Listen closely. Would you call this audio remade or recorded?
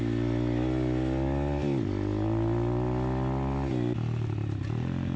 recorded